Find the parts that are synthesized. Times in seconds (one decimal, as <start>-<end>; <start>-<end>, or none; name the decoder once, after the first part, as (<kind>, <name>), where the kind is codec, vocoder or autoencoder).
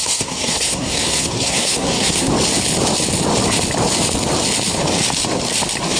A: 0.0-2.3 (codec, SNAC)